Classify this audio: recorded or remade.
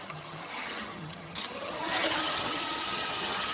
remade